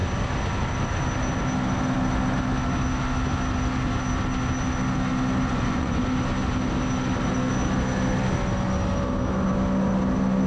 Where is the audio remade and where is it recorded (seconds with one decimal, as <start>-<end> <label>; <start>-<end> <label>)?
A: 0.0-5.5 recorded; 5.5-6.0 remade; 6.0-10.5 recorded